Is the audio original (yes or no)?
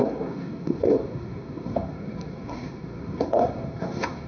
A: no